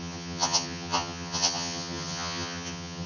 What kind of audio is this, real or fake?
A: fake